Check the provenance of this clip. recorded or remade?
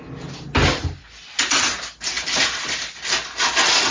recorded